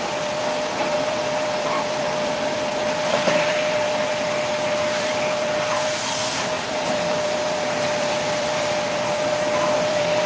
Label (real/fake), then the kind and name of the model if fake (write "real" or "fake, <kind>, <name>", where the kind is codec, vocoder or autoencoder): fake, vocoder, BigVGAN v2